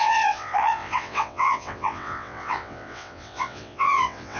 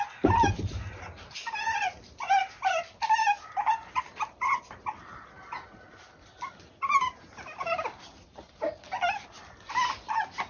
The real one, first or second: second